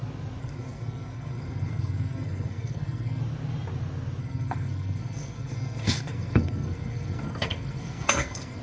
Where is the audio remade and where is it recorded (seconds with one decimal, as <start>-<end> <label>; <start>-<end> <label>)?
0.0-0.4 recorded; 0.4-3.2 remade; 3.2-4.2 recorded; 4.2-8.6 remade

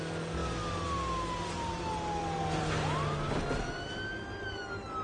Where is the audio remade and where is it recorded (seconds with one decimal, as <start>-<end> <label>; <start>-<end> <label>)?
0.0-5.0 recorded

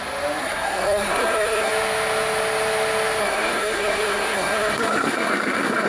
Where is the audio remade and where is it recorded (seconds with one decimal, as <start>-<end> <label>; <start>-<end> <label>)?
0.0-0.4 recorded; 0.4-1.7 remade; 1.7-3.2 recorded; 3.2-5.9 remade